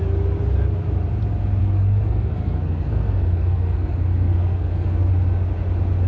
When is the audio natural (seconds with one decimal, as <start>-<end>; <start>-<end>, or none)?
0.0-1.6; 5.1-6.1